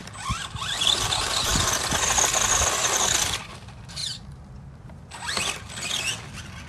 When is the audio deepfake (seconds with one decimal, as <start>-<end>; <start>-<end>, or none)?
none